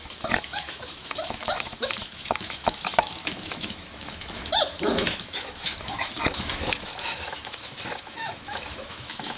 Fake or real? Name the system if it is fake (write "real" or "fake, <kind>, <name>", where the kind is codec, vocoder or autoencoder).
fake, autoencoder, DAC-VAE